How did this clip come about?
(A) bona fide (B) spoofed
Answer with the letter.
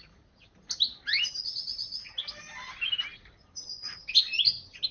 A